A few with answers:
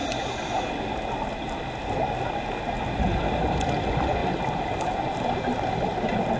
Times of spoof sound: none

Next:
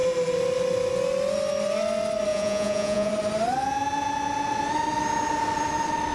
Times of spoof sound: 2.3-3.1 (vocoder, Vocos)

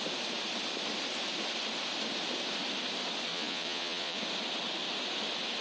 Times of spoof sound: 3.3-4.2 (vocoder, Vocos)

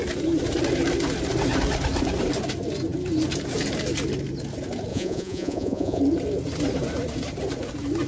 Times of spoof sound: 4.9-6.0 (vocoder, Vocos)

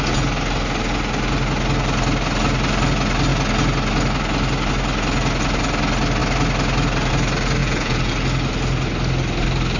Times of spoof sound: 7.6-8.1 (vocoder, Vocos)

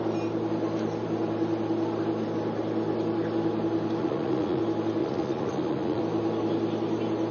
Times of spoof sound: 4.0-4.6 (vocoder, Vocos); 5.0-6.0

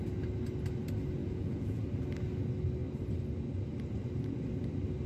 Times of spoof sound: 1.2-1.8 (vocoder, Vocos)